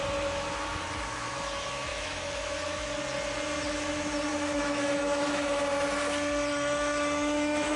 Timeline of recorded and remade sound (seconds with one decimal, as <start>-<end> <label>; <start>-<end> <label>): 0.0-1.9 recorded; 1.9-2.9 remade; 2.9-4.3 recorded; 4.3-5.6 remade; 5.6-6.5 recorded; 6.5-7.8 remade

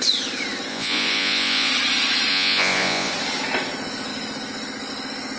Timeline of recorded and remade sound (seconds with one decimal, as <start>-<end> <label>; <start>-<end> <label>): 0.0-0.7 recorded; 0.7-1.7 remade; 1.7-2.3 recorded; 2.3-3.1 remade; 3.1-5.4 recorded

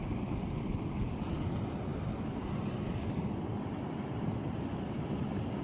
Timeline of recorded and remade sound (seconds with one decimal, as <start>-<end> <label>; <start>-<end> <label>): 0.0-5.6 recorded

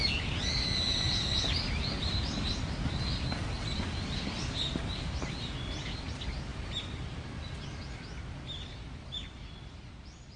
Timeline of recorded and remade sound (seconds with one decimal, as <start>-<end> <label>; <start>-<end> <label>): 0.0-10.4 recorded

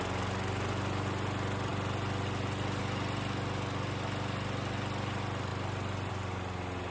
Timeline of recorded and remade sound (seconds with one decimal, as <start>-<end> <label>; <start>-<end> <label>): 0.0-6.9 recorded

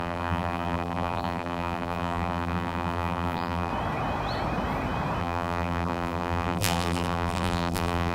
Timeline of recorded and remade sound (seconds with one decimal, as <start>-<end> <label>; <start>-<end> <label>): 0.0-3.7 remade; 3.7-5.2 recorded; 5.2-8.1 remade